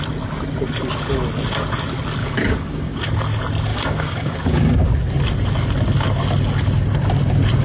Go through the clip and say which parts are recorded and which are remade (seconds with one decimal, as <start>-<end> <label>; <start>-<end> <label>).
0.0-2.2 recorded; 2.2-3.1 remade; 3.1-3.7 recorded; 3.7-4.9 remade; 4.9-7.6 recorded